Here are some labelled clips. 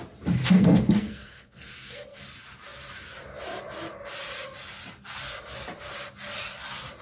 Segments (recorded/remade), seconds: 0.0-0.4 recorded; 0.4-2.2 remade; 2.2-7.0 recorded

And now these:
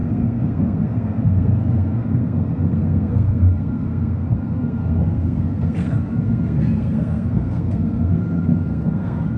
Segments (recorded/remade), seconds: 0.0-9.4 remade

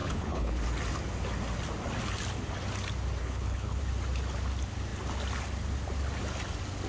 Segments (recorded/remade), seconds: 0.0-0.6 remade; 0.6-3.2 recorded; 3.2-3.8 remade; 3.8-6.9 recorded

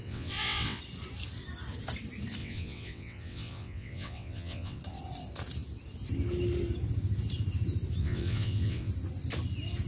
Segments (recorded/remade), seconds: 0.0-0.8 remade; 0.8-2.4 recorded; 2.4-4.8 remade; 4.8-8.0 recorded; 8.0-8.9 remade; 8.9-9.9 recorded